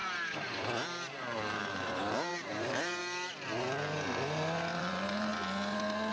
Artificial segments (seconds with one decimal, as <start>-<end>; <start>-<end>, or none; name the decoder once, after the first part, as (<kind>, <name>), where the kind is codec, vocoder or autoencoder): 0.0-3.0 (vocoder, BigVGAN v2); 4.8-5.3